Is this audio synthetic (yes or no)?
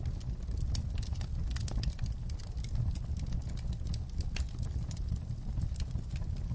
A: no